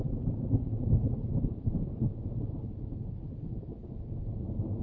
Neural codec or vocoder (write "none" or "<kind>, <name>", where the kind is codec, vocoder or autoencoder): none